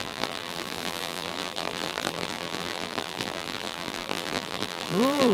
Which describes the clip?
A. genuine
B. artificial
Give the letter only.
B